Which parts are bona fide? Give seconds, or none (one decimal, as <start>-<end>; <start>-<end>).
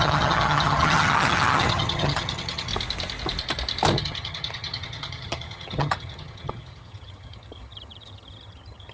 2.7-4.0